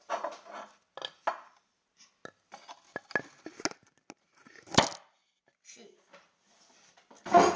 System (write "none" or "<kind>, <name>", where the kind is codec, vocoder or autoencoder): none